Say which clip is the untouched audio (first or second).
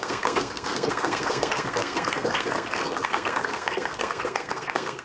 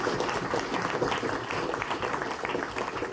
second